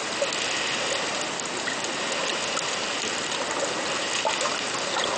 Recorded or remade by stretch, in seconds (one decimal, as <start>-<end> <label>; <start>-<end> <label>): 0.0-5.2 recorded